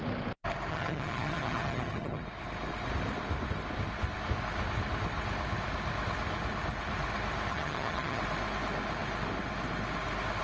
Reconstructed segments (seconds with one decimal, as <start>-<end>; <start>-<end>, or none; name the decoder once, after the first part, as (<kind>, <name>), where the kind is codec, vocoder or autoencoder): 0.7-2.2 (vocoder, HiFi-GAN); 7.5-8.2